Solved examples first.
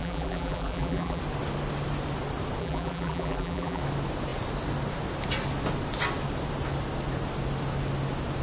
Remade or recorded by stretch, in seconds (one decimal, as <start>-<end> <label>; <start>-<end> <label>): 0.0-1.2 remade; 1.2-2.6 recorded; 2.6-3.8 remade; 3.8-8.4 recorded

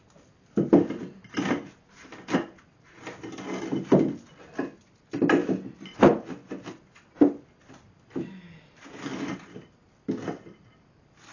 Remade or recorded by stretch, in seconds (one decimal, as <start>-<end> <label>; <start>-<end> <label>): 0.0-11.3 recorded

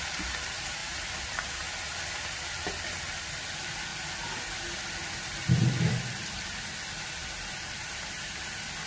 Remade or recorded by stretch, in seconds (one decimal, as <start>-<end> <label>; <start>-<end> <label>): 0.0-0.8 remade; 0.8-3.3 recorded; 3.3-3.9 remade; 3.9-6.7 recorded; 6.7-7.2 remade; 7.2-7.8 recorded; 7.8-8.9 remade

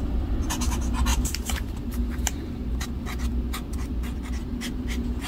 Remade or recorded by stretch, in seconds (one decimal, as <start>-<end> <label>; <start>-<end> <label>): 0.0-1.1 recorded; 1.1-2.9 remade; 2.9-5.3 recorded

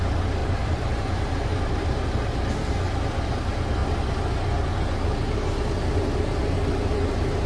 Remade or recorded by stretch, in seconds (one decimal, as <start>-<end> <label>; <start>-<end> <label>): 0.0-0.4 recorded; 0.4-1.9 remade; 1.9-7.5 recorded

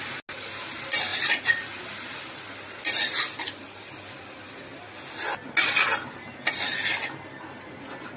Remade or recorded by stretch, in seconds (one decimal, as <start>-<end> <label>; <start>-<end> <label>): 0.0-1.1 recorded; 1.1-4.2 remade; 4.2-8.2 recorded

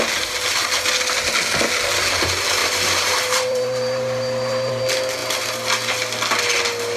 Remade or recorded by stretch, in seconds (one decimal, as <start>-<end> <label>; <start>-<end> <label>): 0.0-2.6 recorded; 2.6-4.7 remade; 4.7-7.0 recorded